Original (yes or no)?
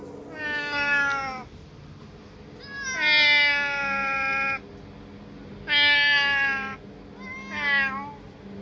yes